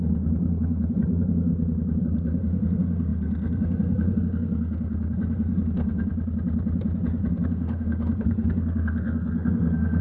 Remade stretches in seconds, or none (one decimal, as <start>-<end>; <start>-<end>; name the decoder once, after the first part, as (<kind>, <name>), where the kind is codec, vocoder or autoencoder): 0.0-1.5 (codec, SNAC); 2.0-6.1; 7.3-10.0